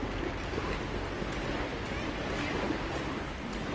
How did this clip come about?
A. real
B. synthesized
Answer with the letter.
A